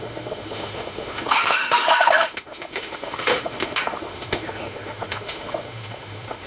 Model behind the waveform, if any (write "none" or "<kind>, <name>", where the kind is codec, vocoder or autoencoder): autoencoder, DAC-VAE